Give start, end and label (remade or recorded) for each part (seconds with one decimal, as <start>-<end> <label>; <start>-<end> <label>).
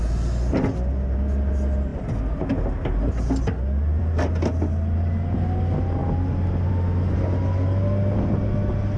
0.0-9.0 recorded